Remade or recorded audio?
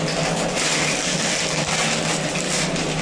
recorded